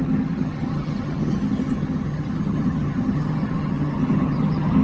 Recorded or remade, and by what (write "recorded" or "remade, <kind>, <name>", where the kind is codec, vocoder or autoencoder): remade, vocoder, HiFi-GAN